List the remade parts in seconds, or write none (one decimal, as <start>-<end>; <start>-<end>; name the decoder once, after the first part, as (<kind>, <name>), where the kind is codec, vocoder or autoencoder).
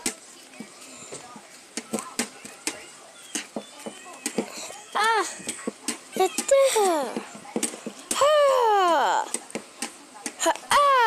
4.8-5.7 (codec, SNAC)